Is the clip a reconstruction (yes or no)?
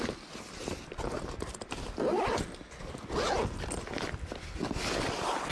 no